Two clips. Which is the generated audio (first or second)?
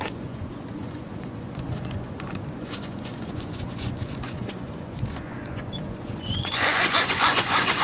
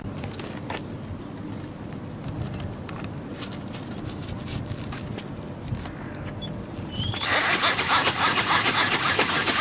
first